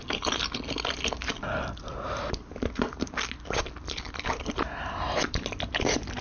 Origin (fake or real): real